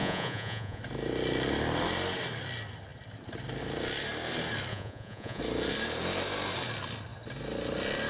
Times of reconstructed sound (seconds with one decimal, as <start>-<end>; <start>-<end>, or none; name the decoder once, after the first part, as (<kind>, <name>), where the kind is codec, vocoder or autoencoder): 0.0-0.8 (vocoder, Vocos); 4.7-5.4